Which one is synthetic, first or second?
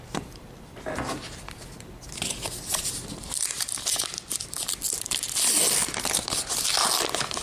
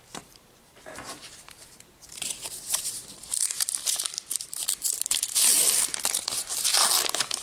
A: second